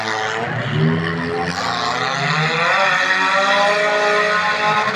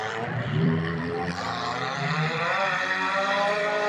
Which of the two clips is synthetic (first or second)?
second